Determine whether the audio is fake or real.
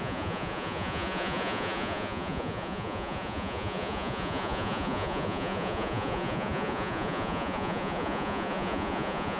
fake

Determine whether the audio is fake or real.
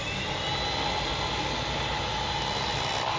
real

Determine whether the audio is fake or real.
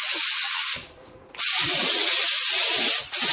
fake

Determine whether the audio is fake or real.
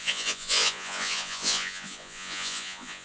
fake